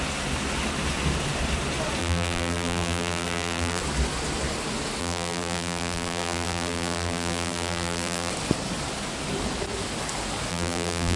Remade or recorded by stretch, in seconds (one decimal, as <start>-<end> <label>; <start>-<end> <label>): 0.0-2.0 recorded; 2.0-3.8 remade; 3.8-5.0 recorded; 5.0-8.3 remade; 8.3-10.5 recorded; 10.5-11.2 remade